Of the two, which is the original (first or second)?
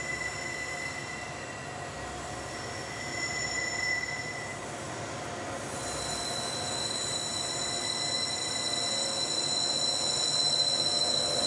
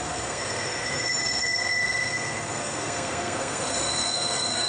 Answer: first